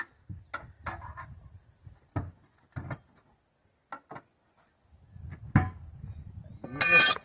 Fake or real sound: real